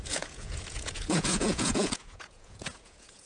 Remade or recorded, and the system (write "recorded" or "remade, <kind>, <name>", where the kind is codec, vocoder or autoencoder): remade, vocoder, Vocos